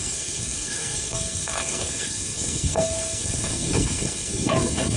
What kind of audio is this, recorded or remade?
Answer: remade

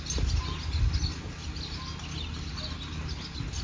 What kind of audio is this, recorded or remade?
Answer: recorded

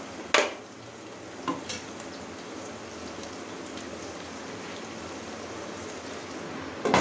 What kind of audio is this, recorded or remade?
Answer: recorded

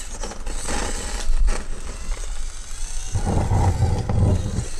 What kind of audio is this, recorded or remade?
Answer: recorded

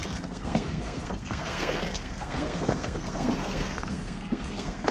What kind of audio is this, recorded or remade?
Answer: remade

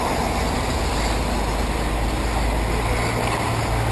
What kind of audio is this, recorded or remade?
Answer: recorded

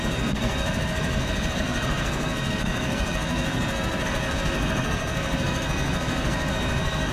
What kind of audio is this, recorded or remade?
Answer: remade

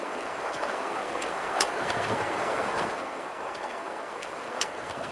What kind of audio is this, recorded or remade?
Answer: remade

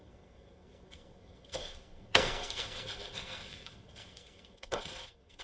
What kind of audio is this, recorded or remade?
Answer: remade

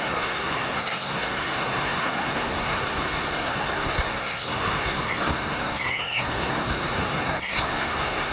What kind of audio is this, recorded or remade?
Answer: remade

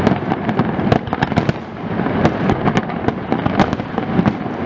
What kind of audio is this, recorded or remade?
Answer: recorded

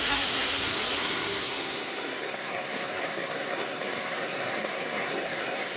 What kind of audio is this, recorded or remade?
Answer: remade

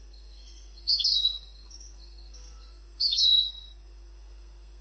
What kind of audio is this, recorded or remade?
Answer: remade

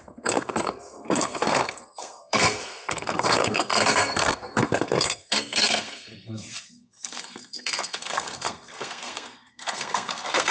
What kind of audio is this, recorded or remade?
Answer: remade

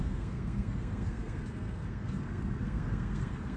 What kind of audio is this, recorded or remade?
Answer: remade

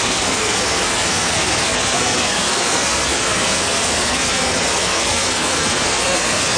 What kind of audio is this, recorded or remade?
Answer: remade